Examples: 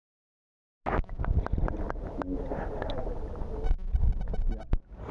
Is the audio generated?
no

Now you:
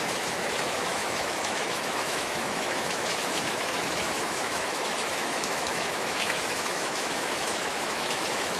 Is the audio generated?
yes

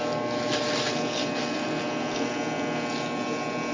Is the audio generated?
no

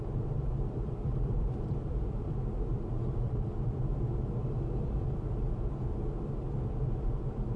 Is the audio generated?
yes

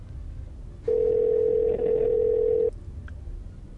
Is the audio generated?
no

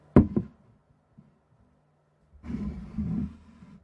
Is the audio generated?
no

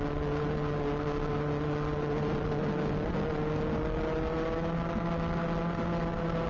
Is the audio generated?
no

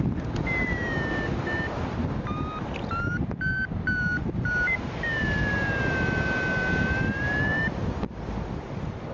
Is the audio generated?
no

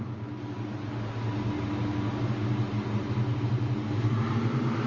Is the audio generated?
no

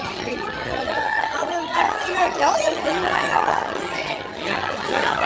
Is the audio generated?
yes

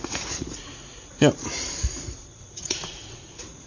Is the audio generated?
yes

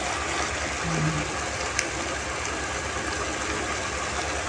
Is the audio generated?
no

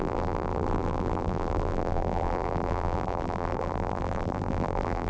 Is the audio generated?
yes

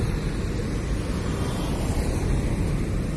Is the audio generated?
no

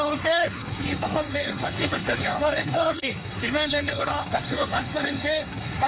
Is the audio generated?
yes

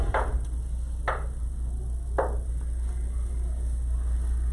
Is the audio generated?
no